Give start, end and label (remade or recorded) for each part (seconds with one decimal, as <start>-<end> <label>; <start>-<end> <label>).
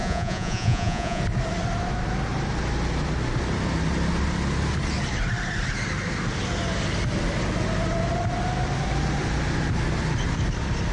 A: 0.0-1.2 remade; 1.2-10.9 recorded